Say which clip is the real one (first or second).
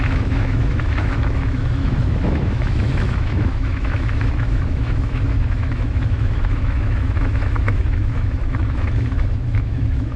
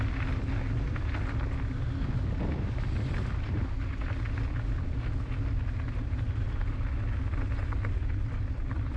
second